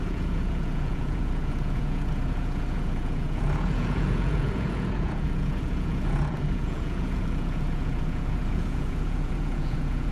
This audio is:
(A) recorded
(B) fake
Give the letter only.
B